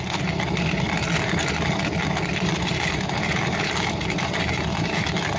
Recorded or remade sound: recorded